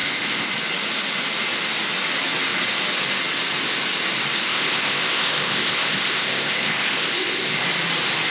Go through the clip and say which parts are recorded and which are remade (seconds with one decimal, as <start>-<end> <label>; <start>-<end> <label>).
0.0-0.5 remade; 0.5-4.5 recorded; 4.5-7.6 remade; 7.6-8.3 recorded